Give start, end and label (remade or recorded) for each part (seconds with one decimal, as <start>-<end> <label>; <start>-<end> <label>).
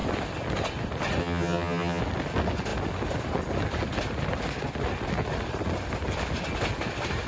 0.0-1.2 recorded; 1.2-2.0 remade; 2.0-7.3 recorded